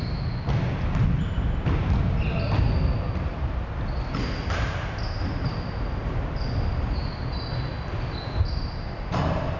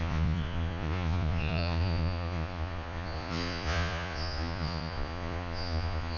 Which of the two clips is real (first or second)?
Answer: first